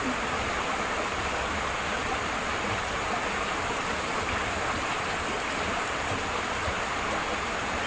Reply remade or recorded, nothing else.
recorded